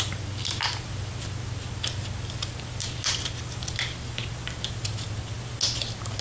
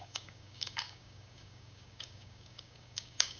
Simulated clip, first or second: second